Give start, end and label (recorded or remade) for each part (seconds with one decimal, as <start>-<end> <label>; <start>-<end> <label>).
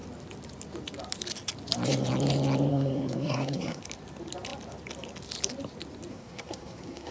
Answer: 0.0-2.7 recorded; 2.7-3.8 remade; 3.8-6.1 recorded; 6.1-7.1 remade